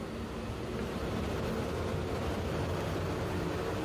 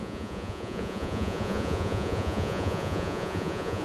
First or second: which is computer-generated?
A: second